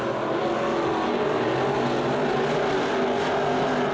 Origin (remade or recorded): recorded